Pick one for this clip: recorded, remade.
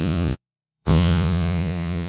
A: remade